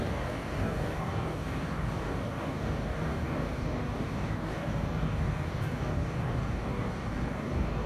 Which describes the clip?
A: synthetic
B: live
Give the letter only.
A